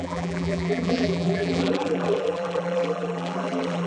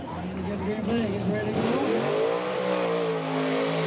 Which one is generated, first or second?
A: first